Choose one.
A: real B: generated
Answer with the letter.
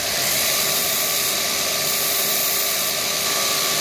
B